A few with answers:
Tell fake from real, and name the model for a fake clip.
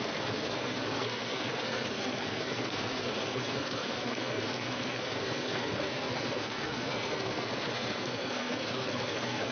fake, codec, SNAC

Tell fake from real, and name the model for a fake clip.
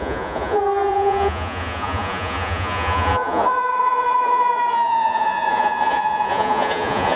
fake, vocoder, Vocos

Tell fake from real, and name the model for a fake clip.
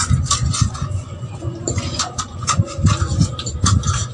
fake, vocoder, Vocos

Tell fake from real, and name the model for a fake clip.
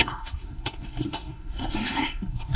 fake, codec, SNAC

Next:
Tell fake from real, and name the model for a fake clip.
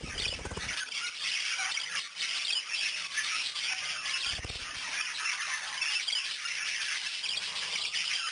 real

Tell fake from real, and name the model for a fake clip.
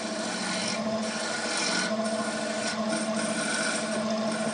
real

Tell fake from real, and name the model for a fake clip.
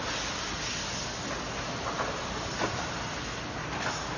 real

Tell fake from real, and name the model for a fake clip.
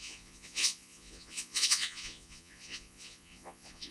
fake, vocoder, Vocos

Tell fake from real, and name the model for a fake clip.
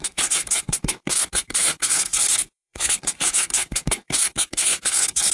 fake, codec, SNAC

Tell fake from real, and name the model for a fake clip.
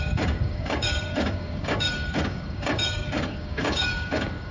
fake, codec, DAC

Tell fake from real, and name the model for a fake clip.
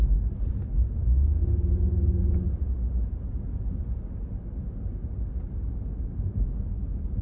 real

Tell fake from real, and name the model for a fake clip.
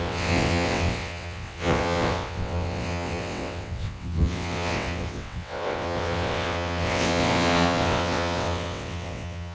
fake, vocoder, WaveNeXt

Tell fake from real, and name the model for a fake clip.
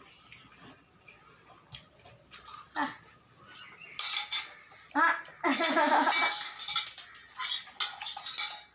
real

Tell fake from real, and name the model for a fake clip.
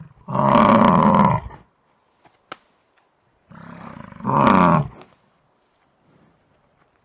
real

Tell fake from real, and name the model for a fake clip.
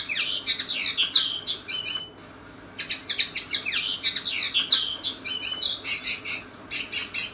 real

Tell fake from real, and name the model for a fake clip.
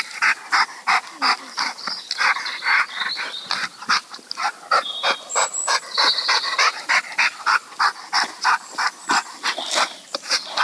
real